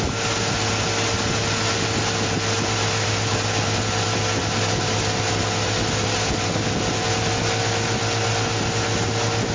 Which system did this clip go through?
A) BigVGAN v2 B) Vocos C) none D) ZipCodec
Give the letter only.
C